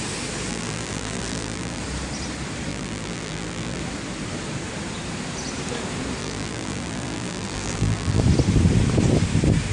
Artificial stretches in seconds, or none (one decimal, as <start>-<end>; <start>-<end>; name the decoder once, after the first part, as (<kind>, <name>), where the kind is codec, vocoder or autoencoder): 0.5-1.8 (vocoder, BigVGAN v2); 2.7-3.8; 6.2-8.2